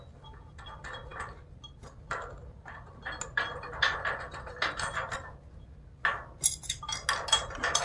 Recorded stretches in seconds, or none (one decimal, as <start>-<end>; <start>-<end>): 0.0-7.8